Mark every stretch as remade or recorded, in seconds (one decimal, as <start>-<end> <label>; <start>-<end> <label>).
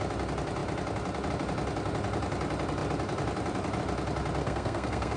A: 0.0-4.4 recorded; 4.4-5.2 remade